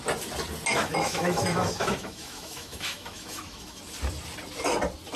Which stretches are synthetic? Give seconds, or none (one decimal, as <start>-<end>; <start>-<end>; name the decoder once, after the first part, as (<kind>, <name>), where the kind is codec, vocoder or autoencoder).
0.7-3.8 (autoencoder, DAC-VAE)